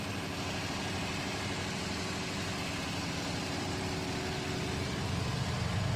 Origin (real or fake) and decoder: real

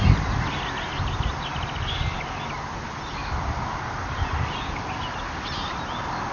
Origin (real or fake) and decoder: real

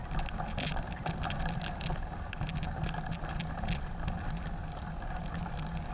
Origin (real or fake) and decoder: real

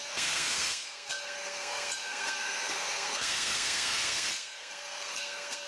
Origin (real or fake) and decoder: fake, codec, SNAC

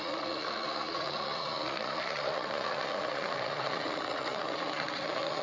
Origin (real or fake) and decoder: fake, vocoder, Vocos